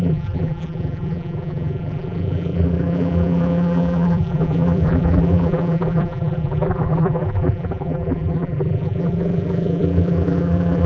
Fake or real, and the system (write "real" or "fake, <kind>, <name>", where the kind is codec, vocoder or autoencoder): fake, vocoder, BigVGAN v2